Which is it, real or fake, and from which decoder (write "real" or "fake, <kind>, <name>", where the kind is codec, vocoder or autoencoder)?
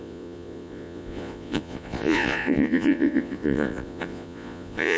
fake, vocoder, Vocos